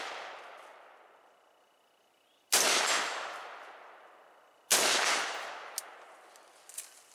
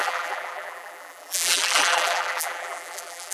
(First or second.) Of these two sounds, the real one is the first